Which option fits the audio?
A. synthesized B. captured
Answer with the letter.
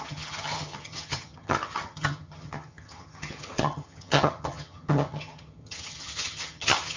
A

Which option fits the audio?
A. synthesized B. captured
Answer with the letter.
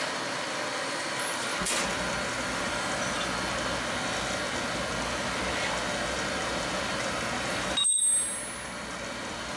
B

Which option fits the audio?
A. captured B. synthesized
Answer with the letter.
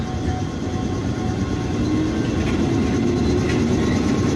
A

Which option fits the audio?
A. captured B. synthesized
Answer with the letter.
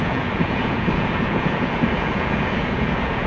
B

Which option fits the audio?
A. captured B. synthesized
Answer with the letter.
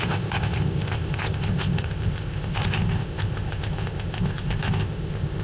B